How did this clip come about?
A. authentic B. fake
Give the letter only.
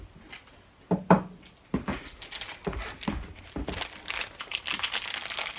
A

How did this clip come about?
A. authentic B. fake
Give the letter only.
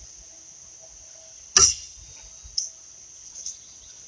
A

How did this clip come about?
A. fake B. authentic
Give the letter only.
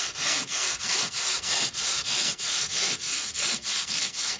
A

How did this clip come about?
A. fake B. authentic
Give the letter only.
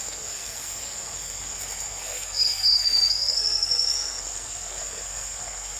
A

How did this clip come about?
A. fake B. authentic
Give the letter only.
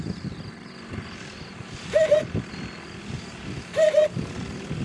B